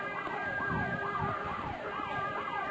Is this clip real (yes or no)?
yes